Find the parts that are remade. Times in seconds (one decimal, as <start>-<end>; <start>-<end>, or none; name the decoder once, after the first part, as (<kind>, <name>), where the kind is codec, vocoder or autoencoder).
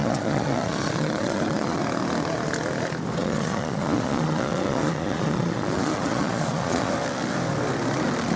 0.0-1.8 (vocoder, Vocos); 3.2-6.9